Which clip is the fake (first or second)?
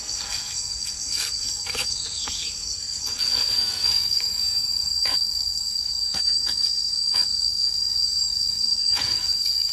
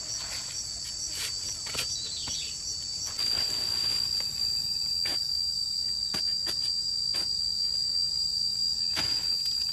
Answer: first